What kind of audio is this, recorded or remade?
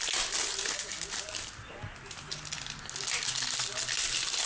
recorded